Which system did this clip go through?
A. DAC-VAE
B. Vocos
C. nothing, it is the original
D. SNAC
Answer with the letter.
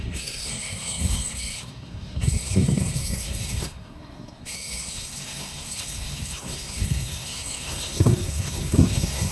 D